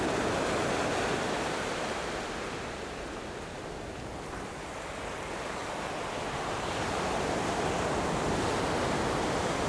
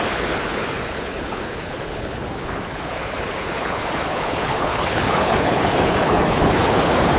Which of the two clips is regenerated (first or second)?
second